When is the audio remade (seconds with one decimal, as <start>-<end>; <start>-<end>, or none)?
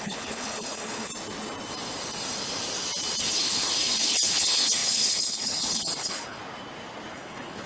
0.0-1.1; 3.2-6.4; 7.1-7.7